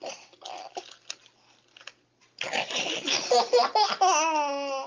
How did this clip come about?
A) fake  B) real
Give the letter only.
B